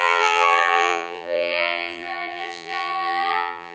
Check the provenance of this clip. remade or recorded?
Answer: remade